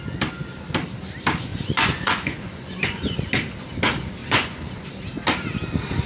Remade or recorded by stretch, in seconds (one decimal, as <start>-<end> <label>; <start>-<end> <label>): 0.0-1.5 recorded; 1.5-3.3 remade; 3.3-4.2 recorded; 4.2-4.9 remade; 4.9-6.1 recorded